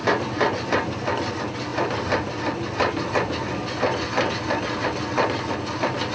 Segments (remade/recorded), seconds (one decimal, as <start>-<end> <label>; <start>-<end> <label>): 0.0-6.1 recorded